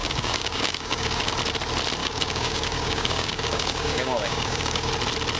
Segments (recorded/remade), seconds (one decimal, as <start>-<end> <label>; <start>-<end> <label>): 0.0-1.3 remade; 1.3-2.0 recorded; 2.0-4.9 remade; 4.9-5.4 recorded